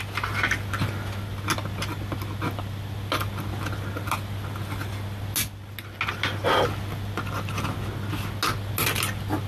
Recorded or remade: recorded